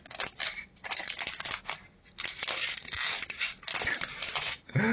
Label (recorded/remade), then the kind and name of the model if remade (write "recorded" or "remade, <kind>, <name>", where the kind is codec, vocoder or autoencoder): recorded